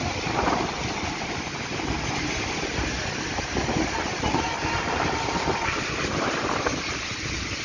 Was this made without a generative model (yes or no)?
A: yes